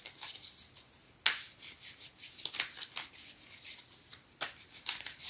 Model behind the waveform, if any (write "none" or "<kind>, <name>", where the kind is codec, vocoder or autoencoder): none